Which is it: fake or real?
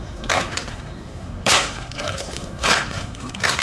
fake